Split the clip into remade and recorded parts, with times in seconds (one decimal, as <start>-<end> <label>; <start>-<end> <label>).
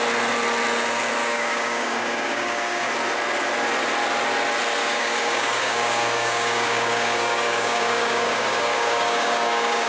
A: 0.0-1.2 recorded; 1.2-2.9 remade; 2.9-4.8 recorded; 4.8-9.9 remade